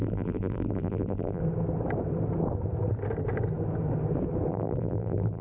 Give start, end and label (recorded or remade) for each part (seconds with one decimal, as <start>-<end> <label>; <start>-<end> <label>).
0.0-1.4 remade; 1.4-4.5 recorded; 4.5-5.4 remade